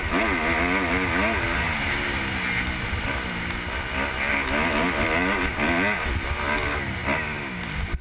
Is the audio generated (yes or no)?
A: no